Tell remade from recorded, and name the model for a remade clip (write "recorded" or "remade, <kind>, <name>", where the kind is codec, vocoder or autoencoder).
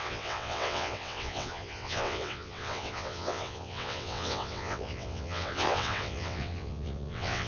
remade, vocoder, WaveNeXt